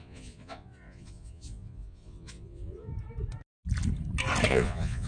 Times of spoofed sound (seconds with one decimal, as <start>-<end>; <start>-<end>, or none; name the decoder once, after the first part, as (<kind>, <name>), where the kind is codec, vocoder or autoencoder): 0.0-2.9 (vocoder, Vocos); 4.5-5.1